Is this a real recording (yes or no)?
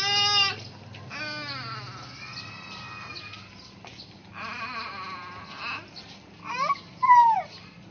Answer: yes